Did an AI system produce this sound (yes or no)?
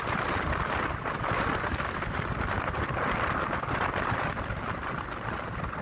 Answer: no